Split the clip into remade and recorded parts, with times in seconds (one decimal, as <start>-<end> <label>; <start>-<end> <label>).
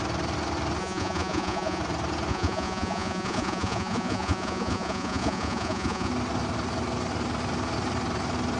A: 0.0-0.8 recorded; 0.8-1.8 remade; 1.8-2.3 recorded; 2.3-6.1 remade; 6.1-8.6 recorded